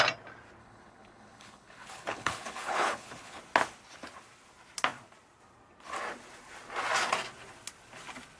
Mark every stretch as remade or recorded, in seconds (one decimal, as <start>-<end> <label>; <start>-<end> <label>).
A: 0.0-0.6 recorded; 0.6-3.4 remade; 3.4-8.4 recorded